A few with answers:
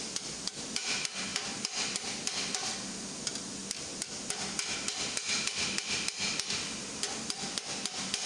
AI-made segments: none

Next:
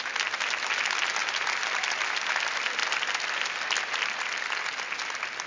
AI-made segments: none

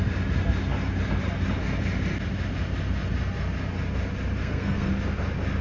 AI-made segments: 4.4-4.9 (codec, SNAC)

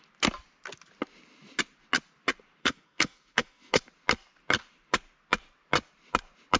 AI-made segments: 2.6-3.8 (codec, SNAC)

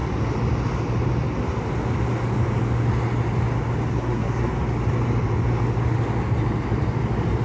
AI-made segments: 3.9-4.5 (codec, SNAC)

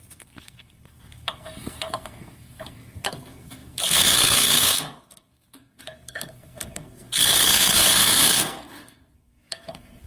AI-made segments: 0.0-10.1 (codec, SNAC)

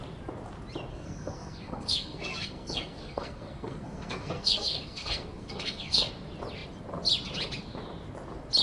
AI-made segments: 0.9-6.1 (codec, SNAC)